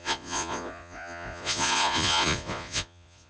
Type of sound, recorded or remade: remade